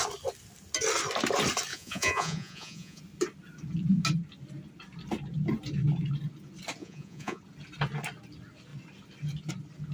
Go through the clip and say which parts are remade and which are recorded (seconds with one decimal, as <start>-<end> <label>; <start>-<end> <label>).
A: 0.0-1.7 recorded; 1.7-3.0 remade; 3.0-6.8 recorded; 6.8-7.4 remade; 7.4-9.9 recorded